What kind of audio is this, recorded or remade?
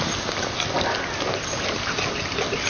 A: recorded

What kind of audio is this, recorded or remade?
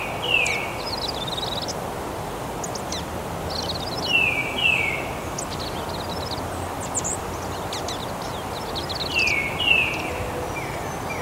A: recorded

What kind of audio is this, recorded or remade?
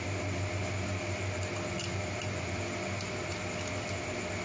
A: recorded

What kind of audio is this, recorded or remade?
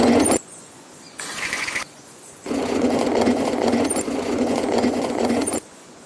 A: remade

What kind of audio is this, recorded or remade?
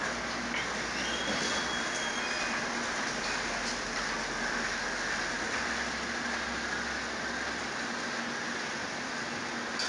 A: recorded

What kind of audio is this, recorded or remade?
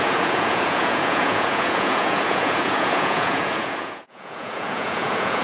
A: remade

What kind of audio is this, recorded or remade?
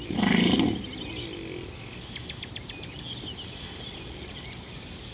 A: recorded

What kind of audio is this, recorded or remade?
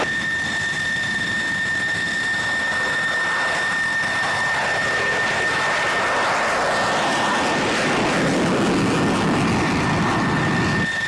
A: recorded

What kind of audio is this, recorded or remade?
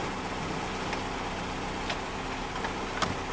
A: recorded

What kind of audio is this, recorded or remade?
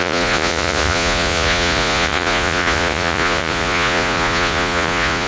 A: remade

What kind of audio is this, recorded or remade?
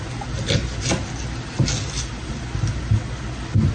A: recorded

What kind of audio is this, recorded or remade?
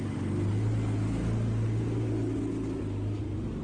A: recorded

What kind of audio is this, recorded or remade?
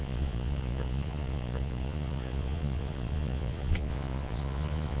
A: remade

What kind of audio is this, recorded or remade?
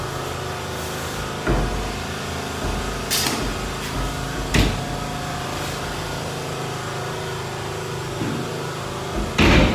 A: recorded